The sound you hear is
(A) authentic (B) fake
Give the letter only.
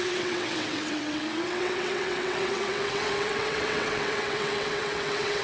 B